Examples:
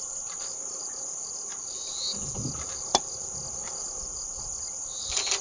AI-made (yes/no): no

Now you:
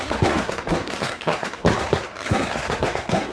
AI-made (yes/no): yes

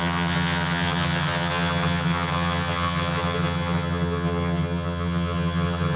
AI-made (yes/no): yes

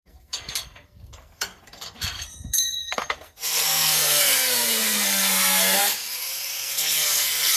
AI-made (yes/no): yes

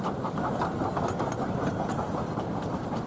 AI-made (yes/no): no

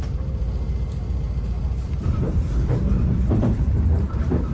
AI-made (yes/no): yes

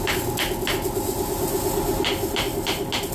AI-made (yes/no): no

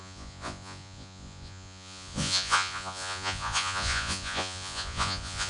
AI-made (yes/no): yes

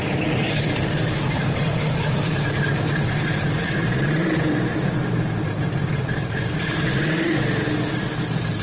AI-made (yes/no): yes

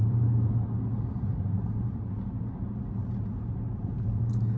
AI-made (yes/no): yes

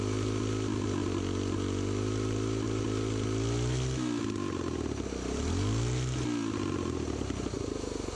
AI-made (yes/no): no